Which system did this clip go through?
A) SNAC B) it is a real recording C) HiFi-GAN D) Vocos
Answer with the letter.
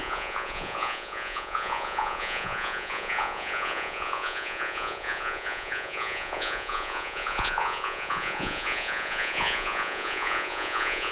D